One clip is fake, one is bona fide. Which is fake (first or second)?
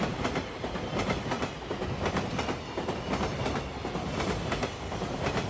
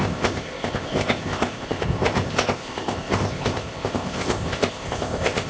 second